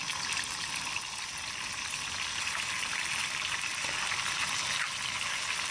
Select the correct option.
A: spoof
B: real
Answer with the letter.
B